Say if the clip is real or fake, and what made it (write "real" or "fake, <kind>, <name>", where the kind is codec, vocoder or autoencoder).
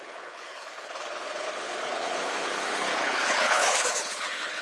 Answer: fake, codec, HILCodec